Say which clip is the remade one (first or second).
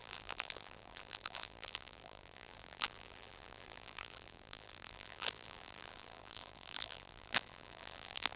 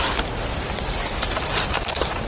first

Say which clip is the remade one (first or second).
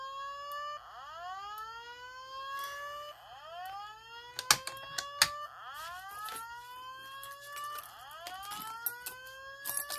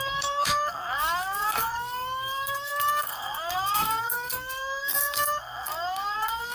second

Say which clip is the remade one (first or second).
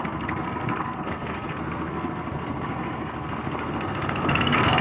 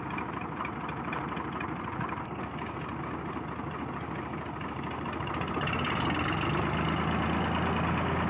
first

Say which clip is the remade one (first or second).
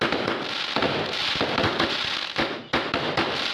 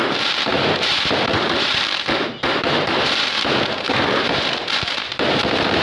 second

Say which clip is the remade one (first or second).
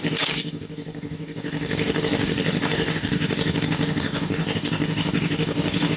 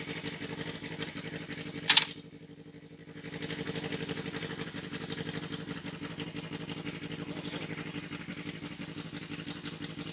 first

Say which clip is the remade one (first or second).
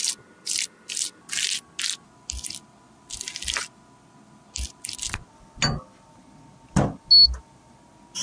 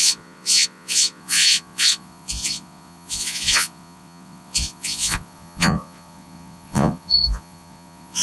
second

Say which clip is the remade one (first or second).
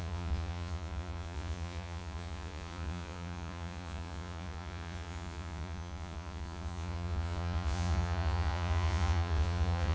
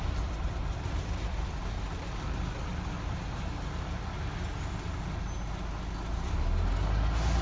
first